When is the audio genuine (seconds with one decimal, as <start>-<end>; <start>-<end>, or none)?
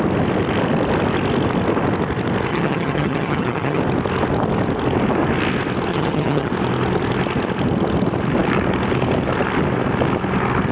0.0-2.5; 3.8-5.9; 6.5-10.7